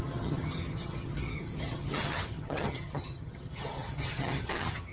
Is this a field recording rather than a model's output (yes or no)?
no